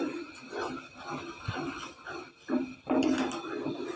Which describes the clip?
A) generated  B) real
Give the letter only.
B